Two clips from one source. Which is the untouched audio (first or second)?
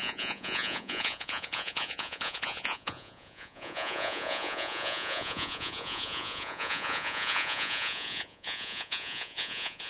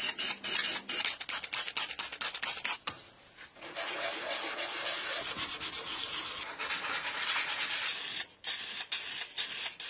second